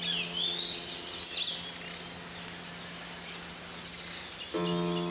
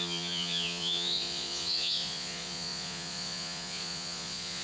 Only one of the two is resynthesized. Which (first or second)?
second